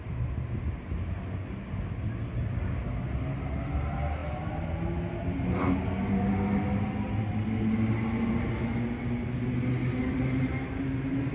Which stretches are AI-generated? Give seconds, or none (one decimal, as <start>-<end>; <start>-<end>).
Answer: none